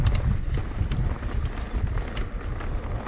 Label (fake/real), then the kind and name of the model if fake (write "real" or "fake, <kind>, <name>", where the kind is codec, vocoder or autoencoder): real